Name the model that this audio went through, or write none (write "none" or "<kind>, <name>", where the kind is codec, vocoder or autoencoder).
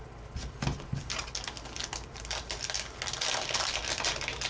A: none